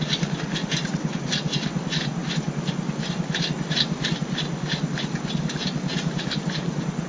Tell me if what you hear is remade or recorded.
recorded